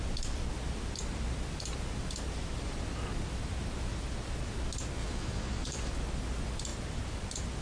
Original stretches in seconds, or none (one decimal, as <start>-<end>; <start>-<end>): 0.0-5.0; 5.9-7.6